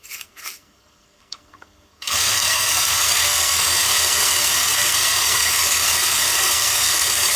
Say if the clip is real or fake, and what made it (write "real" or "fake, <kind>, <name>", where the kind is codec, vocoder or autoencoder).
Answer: fake, codec, SNAC